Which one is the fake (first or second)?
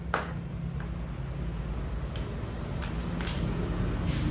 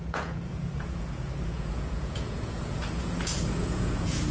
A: second